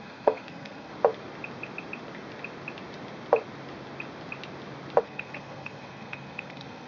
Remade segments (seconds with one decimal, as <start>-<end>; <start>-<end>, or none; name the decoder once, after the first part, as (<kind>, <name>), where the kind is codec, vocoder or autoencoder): 0.0-0.9 (codec, SNAC); 5.0-6.9